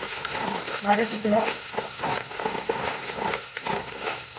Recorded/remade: remade